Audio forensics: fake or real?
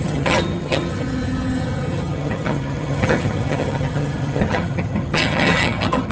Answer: fake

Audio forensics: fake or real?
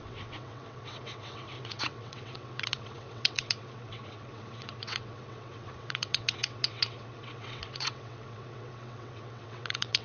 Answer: fake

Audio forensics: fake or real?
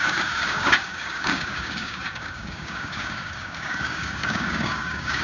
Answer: fake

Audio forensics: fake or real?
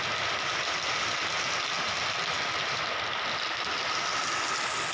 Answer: real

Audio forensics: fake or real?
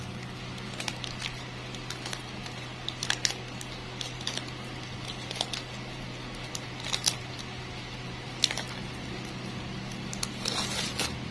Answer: real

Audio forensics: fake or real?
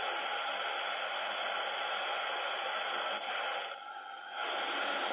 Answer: real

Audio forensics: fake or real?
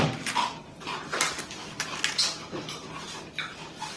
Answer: real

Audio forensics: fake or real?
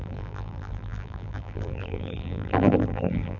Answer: fake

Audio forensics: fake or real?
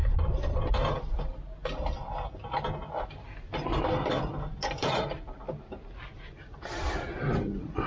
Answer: real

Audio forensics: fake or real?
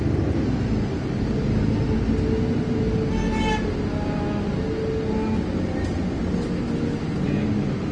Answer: real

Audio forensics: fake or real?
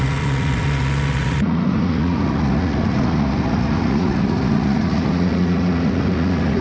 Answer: fake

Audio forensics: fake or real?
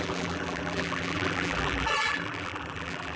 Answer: fake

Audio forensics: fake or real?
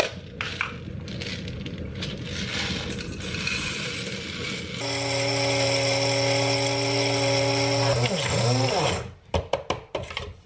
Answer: real